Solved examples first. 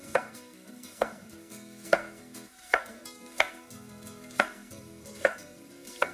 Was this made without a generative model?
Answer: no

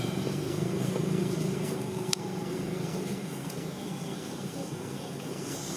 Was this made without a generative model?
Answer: no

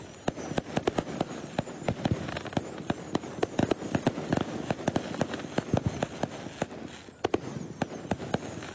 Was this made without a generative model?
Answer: yes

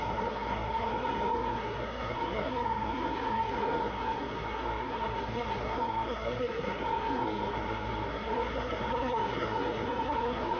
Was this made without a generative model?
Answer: no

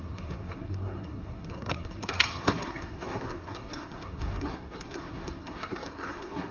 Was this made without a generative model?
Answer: no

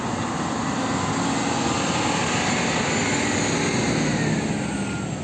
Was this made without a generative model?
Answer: yes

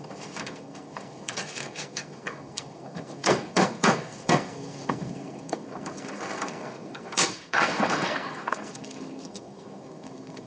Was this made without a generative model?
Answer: no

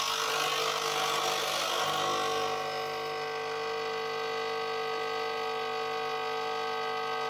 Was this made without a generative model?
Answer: yes